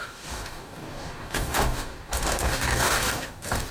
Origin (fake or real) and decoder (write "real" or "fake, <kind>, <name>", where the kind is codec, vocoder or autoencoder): fake, codec, DAC